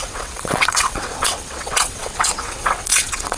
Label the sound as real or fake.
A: fake